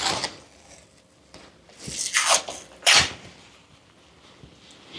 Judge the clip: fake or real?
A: real